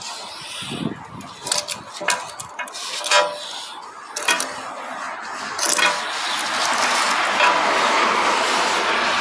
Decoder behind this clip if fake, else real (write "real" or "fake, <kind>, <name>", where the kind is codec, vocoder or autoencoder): real